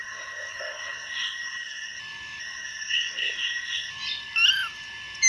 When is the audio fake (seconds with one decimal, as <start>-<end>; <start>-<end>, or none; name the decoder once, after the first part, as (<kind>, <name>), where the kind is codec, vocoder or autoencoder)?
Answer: 0.0-2.0 (codec, SNAC); 2.4-3.9